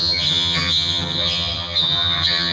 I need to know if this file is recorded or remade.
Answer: remade